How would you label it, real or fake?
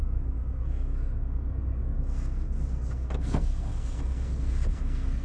fake